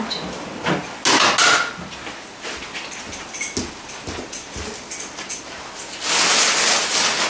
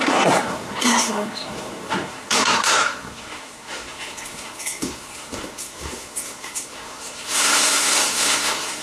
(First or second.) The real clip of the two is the first